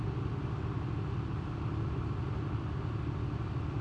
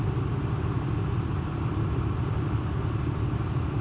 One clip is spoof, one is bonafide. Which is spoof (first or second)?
second